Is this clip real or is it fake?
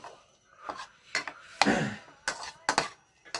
real